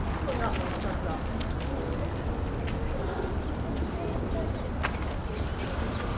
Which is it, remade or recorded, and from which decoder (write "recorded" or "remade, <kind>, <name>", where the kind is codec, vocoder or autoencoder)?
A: recorded